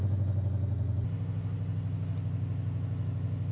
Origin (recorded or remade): recorded